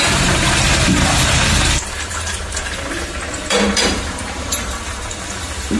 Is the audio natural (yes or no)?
no